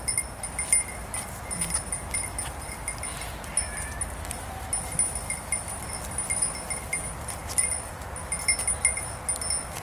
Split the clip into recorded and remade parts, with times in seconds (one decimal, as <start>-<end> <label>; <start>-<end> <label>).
0.0-9.8 recorded